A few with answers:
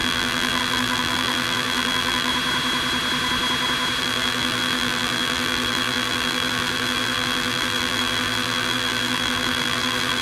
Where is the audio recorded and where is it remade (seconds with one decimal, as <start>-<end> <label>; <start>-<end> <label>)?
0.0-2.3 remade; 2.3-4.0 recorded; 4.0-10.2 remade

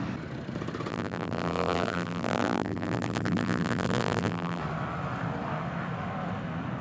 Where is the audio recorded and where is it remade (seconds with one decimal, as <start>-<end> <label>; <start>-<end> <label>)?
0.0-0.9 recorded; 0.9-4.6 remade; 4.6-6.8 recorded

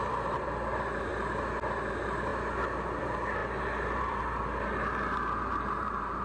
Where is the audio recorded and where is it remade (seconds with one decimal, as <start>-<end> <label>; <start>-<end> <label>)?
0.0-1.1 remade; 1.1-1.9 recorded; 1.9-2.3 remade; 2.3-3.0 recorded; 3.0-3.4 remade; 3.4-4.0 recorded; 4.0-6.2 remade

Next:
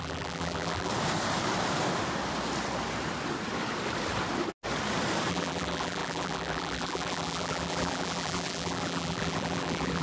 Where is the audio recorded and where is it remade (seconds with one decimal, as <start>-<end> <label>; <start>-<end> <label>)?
0.0-0.9 remade; 0.9-5.3 recorded; 5.3-10.0 remade